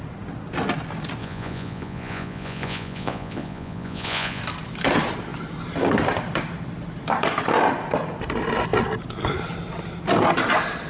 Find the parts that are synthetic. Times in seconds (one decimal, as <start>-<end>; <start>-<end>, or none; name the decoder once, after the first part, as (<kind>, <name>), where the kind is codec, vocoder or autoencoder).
1.2-4.4 (vocoder, Vocos)